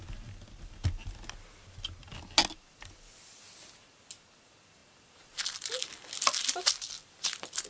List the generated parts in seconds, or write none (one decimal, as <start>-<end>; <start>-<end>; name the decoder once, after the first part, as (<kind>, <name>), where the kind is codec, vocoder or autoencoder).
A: 4.8-7.7 (vocoder, BigVGAN v2)